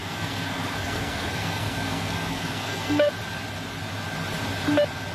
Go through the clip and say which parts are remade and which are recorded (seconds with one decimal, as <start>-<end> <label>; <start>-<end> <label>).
0.0-3.1 remade; 3.1-5.1 recorded